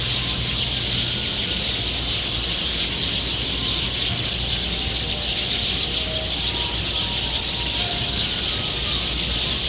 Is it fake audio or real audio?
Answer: real